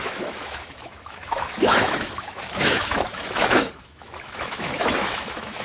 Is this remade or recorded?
remade